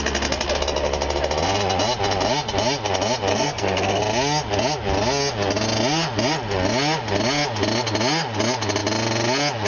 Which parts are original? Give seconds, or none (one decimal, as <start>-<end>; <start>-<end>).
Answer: 0.0-3.3; 4.0-9.7